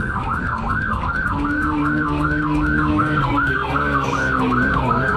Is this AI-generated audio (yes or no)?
yes